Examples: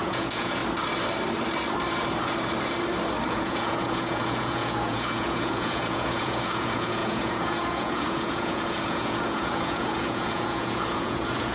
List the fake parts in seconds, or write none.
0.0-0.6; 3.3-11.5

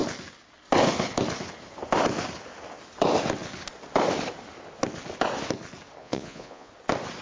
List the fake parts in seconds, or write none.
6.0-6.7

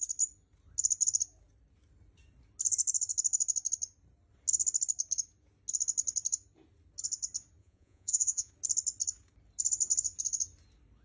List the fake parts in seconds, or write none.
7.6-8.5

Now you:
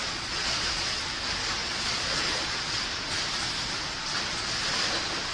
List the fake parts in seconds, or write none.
0.0-1.0; 1.6-2.8

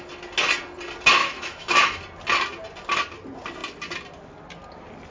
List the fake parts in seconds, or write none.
1.2-2.0

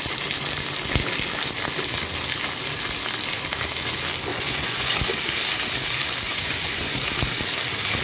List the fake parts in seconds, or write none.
4.3-5.0; 6.3-7.0

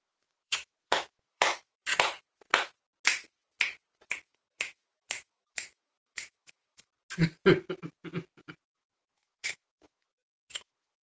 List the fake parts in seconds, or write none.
0.0-1.9; 4.3-6.9; 8.6-11.0

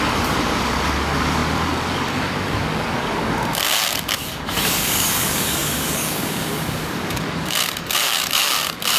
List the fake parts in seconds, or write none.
0.0-9.0